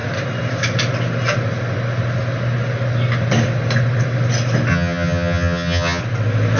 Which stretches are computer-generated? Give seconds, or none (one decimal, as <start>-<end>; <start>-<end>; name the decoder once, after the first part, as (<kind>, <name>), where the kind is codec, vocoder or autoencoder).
4.7-6.0 (vocoder, HiFi-GAN)